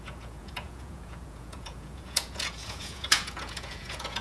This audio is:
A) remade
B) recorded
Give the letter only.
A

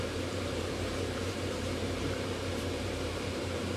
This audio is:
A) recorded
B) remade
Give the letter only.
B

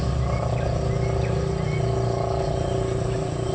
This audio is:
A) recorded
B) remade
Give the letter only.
A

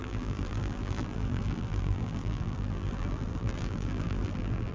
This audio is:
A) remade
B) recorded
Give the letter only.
A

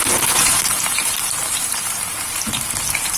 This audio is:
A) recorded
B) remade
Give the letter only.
B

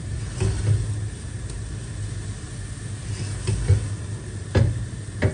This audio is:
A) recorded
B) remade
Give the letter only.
A